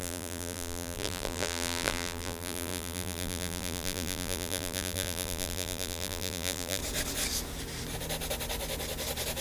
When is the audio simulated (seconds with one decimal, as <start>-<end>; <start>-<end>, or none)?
0.0-6.8